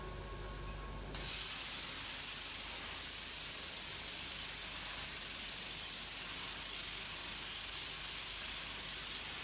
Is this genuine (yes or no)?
yes